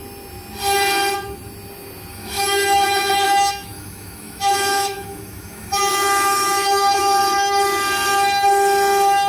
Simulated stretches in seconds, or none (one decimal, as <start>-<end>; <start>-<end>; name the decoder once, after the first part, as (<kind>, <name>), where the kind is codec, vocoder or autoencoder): 2.1-7.2 (autoencoder, DAC-VAE)